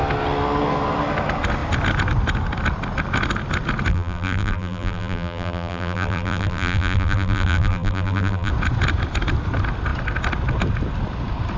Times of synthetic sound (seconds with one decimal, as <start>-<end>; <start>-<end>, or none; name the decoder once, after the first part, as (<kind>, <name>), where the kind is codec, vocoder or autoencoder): 3.9-8.5 (vocoder, BigVGAN v2)